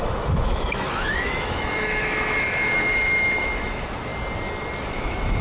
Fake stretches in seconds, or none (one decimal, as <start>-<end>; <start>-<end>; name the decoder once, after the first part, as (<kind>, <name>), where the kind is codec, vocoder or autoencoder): 0.0-4.1 (autoencoder, DAC-VAE); 4.8-5.4